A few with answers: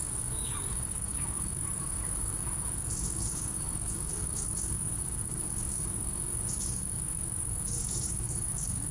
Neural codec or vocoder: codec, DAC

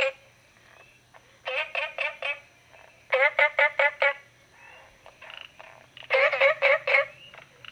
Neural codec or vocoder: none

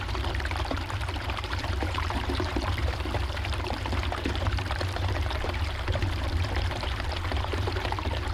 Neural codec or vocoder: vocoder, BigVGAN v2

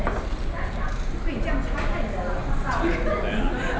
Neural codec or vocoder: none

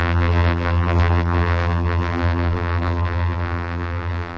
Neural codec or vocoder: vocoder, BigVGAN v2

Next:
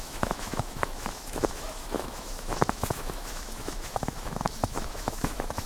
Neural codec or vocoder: autoencoder, DAC-VAE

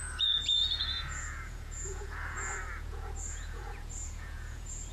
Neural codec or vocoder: vocoder, Vocos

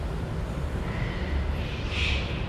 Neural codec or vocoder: none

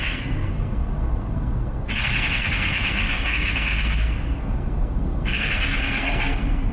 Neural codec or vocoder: codec, SNAC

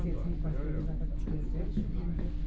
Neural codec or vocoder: none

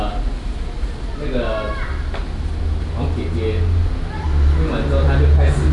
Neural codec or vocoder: none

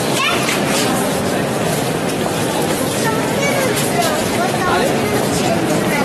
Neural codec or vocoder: none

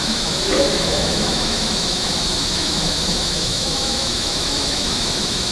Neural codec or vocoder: autoencoder, DAC-VAE